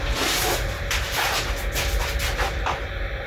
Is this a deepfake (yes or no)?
no